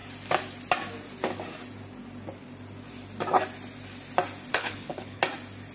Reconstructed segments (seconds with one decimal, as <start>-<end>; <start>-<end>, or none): 4.5-5.2